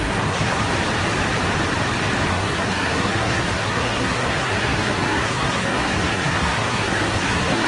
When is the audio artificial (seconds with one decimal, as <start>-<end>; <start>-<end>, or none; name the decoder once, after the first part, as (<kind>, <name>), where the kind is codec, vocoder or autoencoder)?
0.0-0.6 (codec, SNAC); 2.3-7.7